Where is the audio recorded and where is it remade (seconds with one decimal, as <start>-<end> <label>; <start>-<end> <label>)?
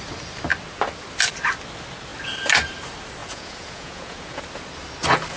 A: 0.0-3.2 recorded; 3.2-4.4 remade; 4.4-5.4 recorded